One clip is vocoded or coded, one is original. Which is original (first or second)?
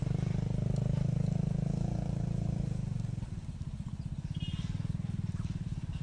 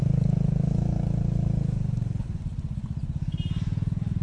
second